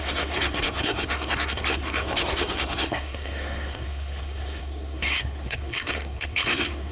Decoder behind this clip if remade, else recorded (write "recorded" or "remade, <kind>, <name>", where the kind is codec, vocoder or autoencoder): remade, codec, SNAC